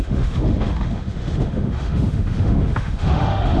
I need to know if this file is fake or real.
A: fake